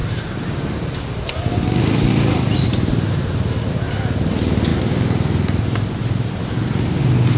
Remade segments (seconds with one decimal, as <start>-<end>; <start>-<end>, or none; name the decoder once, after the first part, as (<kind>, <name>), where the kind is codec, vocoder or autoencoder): 0.0-1.4 (vocoder, BigVGAN v2); 2.1-3.7; 4.7-7.4